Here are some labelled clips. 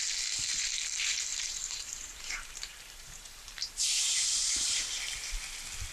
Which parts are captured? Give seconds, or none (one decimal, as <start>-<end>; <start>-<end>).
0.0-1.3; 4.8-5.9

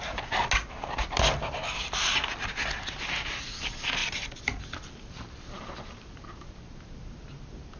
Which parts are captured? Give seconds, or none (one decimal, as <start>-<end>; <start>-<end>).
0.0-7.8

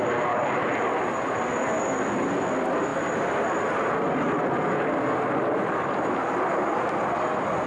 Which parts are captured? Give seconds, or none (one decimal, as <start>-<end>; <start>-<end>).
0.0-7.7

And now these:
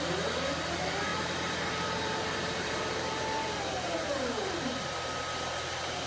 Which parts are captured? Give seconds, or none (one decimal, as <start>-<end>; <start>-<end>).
0.0-1.1; 4.8-6.1

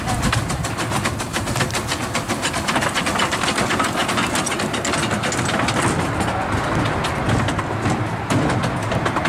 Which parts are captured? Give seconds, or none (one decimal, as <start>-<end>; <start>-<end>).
1.9-3.1; 4.0-8.9

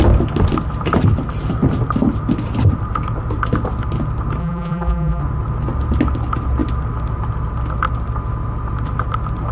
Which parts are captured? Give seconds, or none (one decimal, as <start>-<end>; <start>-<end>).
0.0-4.4; 5.2-9.5

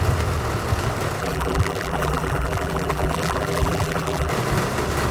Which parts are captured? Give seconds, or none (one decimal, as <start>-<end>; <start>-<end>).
0.0-1.2; 4.3-5.1

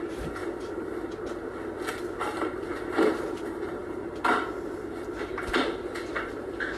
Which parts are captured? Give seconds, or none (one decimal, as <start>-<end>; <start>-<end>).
0.4-1.9